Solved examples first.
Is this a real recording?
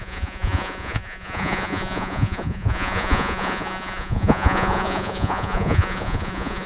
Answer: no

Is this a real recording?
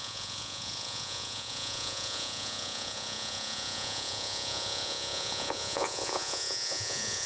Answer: no